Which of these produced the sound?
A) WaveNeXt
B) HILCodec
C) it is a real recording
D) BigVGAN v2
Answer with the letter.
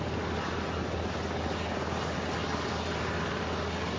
C